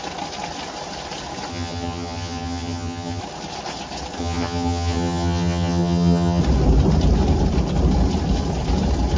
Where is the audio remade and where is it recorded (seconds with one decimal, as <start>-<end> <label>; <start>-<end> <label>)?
0.0-1.5 recorded; 1.5-3.2 remade; 3.2-4.2 recorded; 4.2-6.4 remade; 6.4-9.2 recorded